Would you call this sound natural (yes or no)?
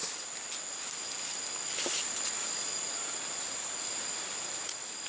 yes